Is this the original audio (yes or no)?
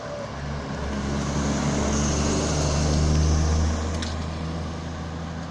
yes